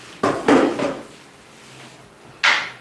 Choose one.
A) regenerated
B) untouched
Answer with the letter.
B